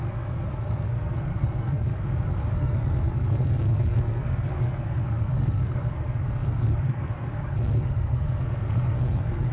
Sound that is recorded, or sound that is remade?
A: remade